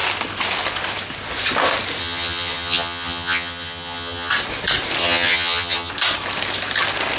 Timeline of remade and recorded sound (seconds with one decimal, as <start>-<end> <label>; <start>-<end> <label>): 0.0-2.0 recorded; 2.0-4.3 remade; 4.3-5.0 recorded; 5.0-5.9 remade; 5.9-7.2 recorded